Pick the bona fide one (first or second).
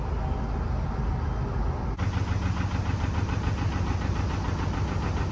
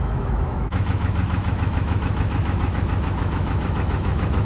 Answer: first